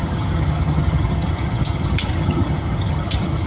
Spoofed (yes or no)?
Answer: yes